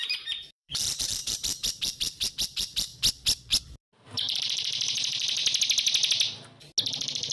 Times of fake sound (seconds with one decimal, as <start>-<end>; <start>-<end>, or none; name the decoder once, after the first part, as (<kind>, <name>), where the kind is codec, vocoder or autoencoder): 0.0-2.9 (vocoder, BigVGAN v2); 3.6-5.4; 6.8-7.3